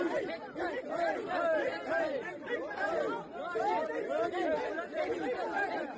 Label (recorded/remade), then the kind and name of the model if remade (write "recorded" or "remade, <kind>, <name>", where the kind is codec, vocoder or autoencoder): recorded